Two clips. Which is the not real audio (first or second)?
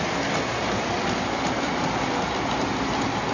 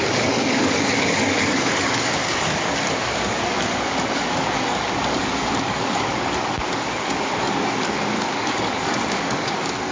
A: second